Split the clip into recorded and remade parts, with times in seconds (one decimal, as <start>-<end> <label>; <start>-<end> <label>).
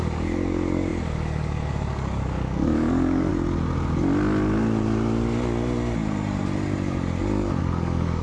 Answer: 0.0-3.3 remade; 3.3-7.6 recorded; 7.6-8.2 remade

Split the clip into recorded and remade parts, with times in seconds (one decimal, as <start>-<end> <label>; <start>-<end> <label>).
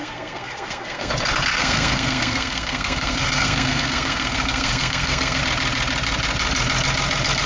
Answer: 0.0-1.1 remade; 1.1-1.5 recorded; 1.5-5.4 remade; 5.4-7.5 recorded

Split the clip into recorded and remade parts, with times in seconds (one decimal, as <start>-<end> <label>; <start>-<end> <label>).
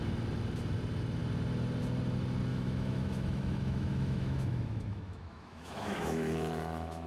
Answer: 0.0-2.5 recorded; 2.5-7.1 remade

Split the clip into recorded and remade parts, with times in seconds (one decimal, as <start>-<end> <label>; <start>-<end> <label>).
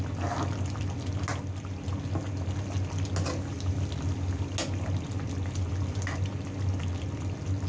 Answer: 0.0-7.7 recorded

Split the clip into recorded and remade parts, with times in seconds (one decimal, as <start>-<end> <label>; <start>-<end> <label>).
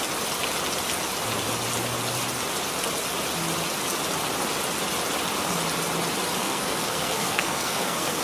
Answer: 0.0-6.4 recorded; 6.4-8.2 remade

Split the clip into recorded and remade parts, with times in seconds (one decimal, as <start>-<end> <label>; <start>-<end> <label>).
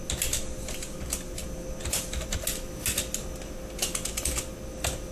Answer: 0.0-5.1 recorded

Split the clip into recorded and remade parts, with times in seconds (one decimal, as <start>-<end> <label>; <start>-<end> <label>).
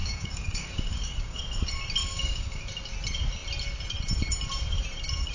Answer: 0.0-1.4 remade; 1.4-2.0 recorded; 2.0-2.7 remade; 2.7-5.3 recorded